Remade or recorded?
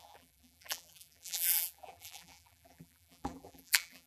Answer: remade